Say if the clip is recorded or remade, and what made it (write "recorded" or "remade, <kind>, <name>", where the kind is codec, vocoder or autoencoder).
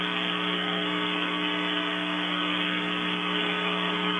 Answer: remade, codec, SNAC